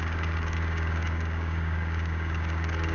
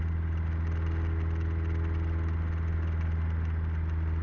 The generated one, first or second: first